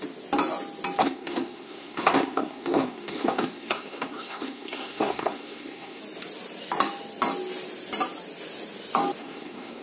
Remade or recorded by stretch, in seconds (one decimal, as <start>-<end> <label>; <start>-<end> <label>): 0.0-1.0 recorded; 1.0-6.0 remade; 6.0-9.2 recorded; 9.2-9.8 remade